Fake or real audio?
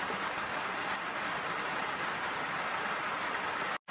real